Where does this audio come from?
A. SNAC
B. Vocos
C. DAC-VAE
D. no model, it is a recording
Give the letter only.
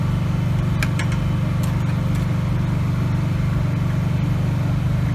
D